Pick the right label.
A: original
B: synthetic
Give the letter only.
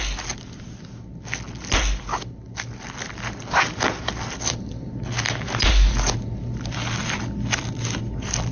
A